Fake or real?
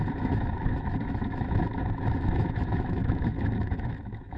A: fake